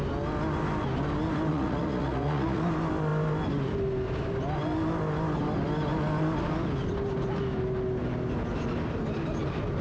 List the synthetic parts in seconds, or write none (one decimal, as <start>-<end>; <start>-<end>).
1.5-2.6